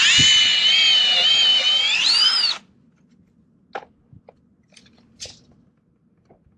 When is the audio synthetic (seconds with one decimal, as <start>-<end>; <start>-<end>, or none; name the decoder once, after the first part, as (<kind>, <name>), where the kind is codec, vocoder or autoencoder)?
none